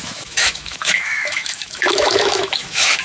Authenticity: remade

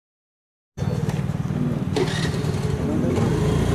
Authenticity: recorded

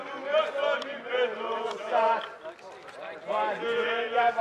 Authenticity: recorded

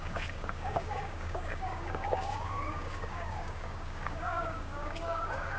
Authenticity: remade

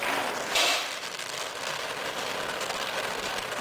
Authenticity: recorded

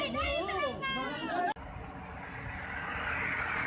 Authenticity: recorded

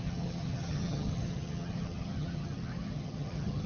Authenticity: remade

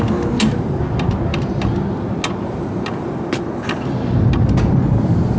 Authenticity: recorded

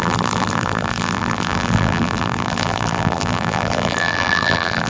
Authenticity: remade